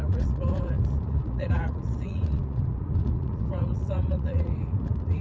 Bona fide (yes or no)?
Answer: no